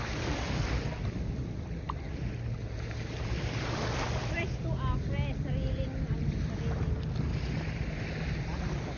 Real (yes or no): yes